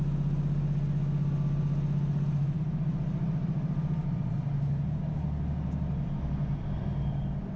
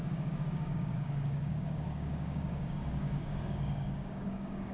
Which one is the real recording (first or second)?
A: first